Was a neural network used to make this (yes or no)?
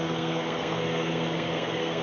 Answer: yes